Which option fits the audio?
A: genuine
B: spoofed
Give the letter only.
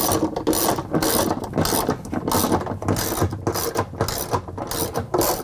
A